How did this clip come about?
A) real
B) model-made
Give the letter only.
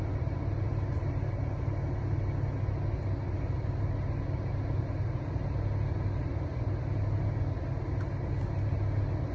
A